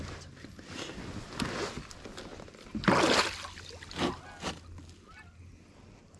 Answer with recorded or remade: recorded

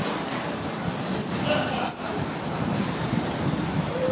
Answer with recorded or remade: recorded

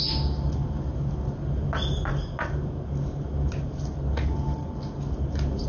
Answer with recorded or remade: recorded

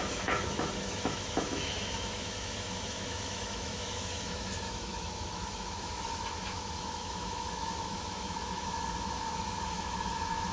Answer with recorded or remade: remade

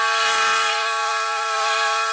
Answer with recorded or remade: recorded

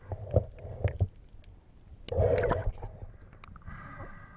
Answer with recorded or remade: recorded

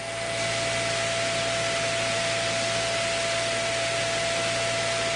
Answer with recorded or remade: recorded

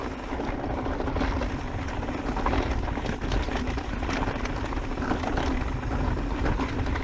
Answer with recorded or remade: recorded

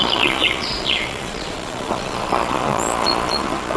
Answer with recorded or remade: remade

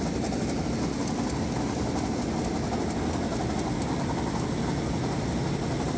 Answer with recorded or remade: recorded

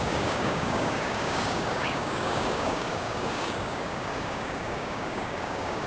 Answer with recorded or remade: remade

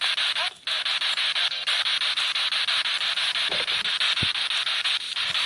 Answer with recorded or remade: recorded